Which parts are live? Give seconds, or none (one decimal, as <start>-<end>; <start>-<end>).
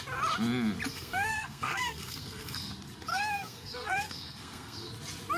0.0-0.9; 2.7-3.1; 4.9-5.4